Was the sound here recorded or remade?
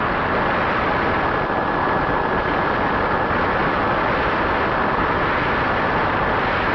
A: recorded